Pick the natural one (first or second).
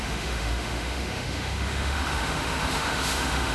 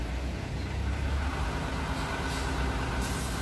second